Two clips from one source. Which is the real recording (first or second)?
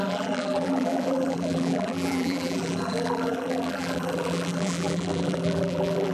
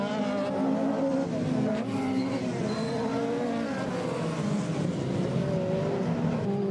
second